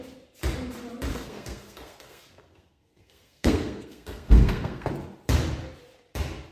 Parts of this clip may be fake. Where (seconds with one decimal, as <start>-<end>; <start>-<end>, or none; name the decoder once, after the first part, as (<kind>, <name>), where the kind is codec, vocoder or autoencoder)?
1.1-4.9 (codec, SNAC)